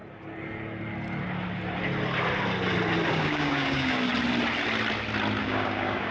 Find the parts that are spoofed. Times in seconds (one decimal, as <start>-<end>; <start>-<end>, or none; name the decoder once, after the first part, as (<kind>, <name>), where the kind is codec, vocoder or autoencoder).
3.1-4.1 (codec, DAC); 5.4-6.1